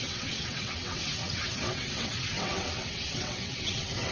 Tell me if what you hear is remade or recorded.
remade